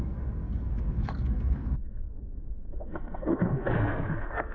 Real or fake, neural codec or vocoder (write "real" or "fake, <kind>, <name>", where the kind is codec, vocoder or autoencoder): fake, codec, SNAC